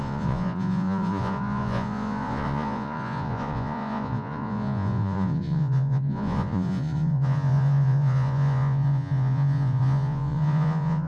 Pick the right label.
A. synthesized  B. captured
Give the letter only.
A